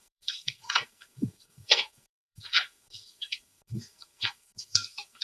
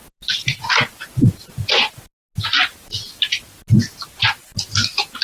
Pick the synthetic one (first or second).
first